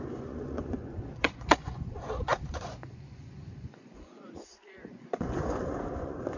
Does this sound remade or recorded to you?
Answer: remade